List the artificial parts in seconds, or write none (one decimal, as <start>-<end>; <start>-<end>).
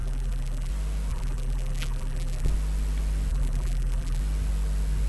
0.0-0.7; 1.1-2.5; 3.3-4.2